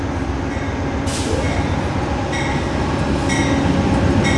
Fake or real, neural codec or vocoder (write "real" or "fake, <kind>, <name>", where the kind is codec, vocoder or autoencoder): real